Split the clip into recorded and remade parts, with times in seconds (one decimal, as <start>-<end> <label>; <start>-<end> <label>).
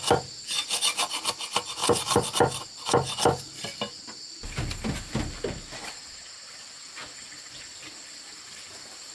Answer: 0.0-9.1 recorded